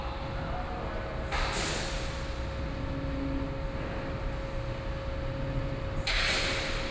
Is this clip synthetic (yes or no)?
no